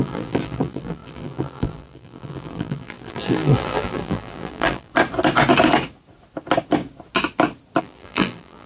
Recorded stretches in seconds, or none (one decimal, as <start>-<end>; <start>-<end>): 4.9-7.8

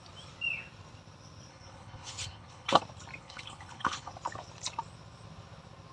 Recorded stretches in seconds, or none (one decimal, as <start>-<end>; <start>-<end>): 0.0-1.5; 2.8-3.2; 4.1-5.9

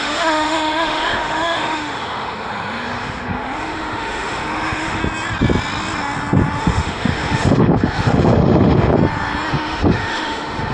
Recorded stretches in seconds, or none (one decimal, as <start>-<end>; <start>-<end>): 5.0-6.6; 8.9-9.5

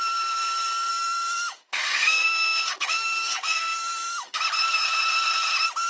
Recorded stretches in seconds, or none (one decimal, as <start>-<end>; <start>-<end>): 0.0-0.9; 4.4-5.9

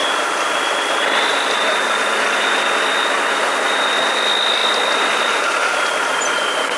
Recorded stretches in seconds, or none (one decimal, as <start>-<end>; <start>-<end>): 0.0-6.8

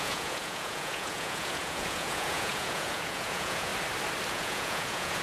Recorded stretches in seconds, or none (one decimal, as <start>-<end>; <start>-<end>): 3.7-4.3

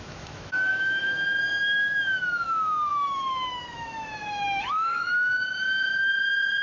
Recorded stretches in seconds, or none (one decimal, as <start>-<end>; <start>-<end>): none